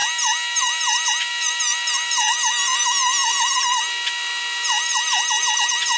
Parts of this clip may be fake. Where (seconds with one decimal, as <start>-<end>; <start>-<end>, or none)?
none